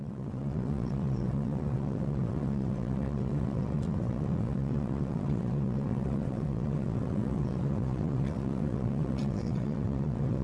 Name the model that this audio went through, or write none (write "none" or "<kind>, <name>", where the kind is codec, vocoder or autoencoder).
vocoder, WaveNeXt